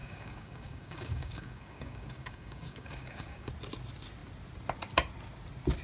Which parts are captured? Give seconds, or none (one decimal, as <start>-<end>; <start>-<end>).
3.5-5.8